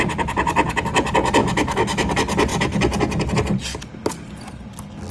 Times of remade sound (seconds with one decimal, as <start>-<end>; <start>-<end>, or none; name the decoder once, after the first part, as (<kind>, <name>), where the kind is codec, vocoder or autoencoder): 1.4-2.1 (autoencoder, DAC-VAE)